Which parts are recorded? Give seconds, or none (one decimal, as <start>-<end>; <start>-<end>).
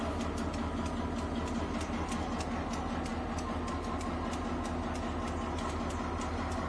0.0-6.7